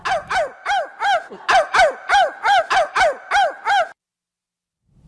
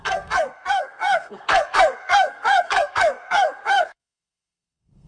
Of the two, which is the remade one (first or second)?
second